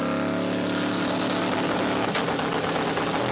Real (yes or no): yes